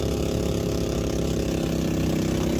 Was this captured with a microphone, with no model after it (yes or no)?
yes